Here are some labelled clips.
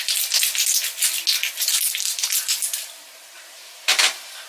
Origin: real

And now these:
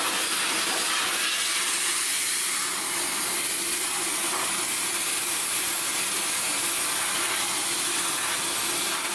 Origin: real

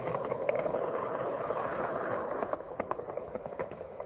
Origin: fake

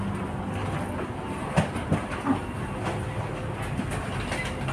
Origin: real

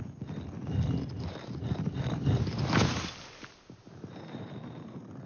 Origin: real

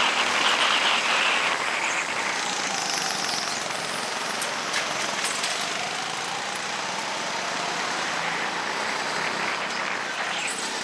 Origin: real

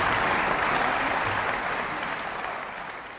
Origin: real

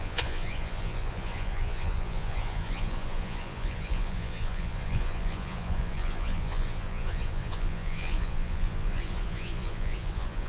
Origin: fake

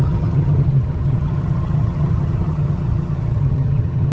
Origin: fake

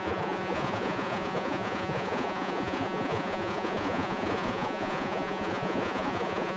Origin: fake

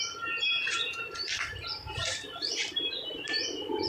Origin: fake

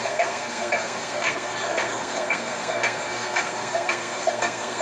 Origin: fake